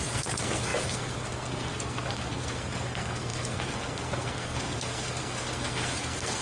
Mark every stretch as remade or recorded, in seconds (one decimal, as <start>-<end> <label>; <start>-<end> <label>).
0.0-6.4 remade